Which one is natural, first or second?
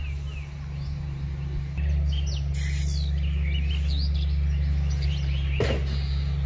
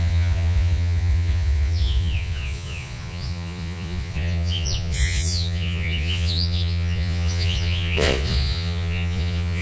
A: first